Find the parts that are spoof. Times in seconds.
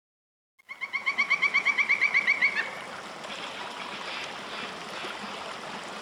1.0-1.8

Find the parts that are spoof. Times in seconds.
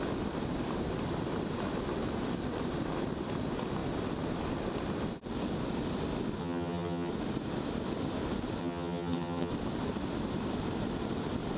6.4-7.1; 8.6-9.5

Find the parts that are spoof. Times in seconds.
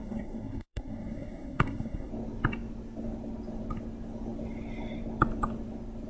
0.0-2.1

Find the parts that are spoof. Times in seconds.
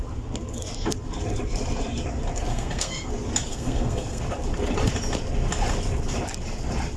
2.5-3.1; 3.5-4.2